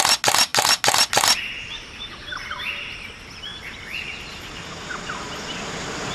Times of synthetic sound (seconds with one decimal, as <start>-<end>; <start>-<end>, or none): none